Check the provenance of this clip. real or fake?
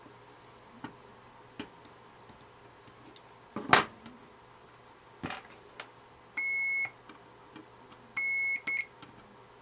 real